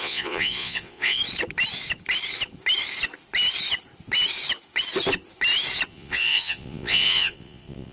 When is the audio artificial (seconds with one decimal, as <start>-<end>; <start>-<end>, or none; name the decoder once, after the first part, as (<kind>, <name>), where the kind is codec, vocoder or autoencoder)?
0.0-1.2 (vocoder, Vocos); 5.9-7.9